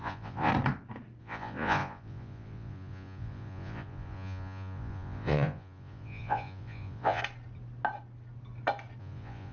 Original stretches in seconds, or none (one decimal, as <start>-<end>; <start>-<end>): 0.5-1.2; 7.2-9.0